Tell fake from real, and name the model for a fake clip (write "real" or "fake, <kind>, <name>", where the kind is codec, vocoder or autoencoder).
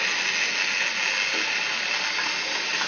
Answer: real